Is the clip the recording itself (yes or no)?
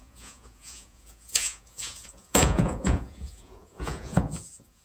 no